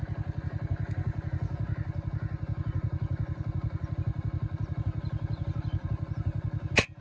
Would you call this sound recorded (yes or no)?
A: yes